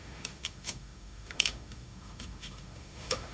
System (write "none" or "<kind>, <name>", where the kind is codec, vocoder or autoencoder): autoencoder, DAC-VAE